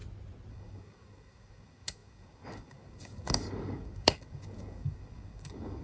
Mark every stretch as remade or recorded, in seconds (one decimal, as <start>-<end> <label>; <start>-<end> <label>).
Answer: 0.0-0.5 recorded; 0.5-5.8 remade